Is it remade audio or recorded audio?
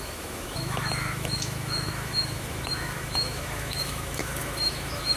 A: remade